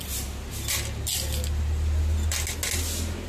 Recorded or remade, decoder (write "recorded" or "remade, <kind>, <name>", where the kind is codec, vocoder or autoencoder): recorded